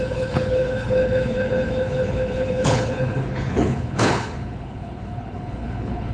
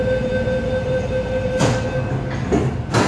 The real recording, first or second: second